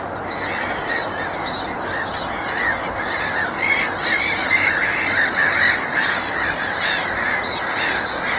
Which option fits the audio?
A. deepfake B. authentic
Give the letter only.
B